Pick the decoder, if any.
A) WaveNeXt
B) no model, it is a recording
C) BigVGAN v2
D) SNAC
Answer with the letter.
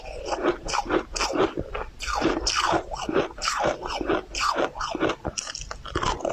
B